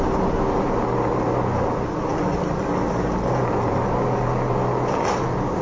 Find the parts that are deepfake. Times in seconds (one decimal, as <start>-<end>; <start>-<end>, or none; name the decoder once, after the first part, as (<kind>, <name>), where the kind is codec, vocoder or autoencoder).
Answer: none